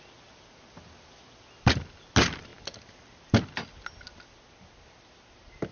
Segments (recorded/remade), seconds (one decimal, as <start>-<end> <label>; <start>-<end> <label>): 0.0-5.7 recorded